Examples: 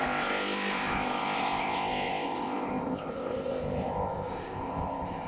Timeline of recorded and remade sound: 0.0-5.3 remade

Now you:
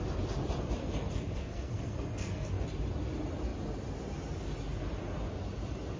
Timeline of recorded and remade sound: 0.0-0.8 recorded; 0.8-2.6 remade; 2.6-6.0 recorded

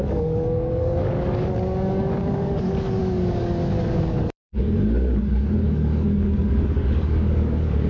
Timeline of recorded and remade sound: 0.0-7.9 remade

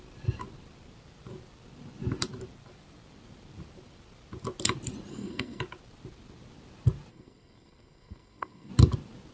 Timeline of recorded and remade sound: 0.0-5.1 recorded; 5.1-5.6 remade; 5.6-7.1 recorded; 7.1-8.7 remade; 8.7-9.3 recorded

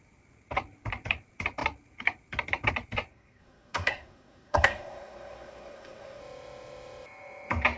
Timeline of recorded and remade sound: 0.0-3.1 recorded; 3.1-6.2 remade; 6.2-7.8 recorded

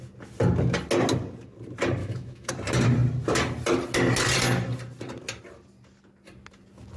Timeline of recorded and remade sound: 0.0-2.0 recorded; 2.0-2.5 remade; 2.5-7.0 recorded